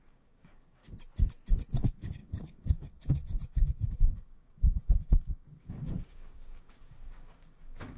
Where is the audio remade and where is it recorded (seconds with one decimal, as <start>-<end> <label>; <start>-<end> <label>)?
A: 0.0-0.8 remade; 0.8-1.8 recorded; 1.8-8.0 remade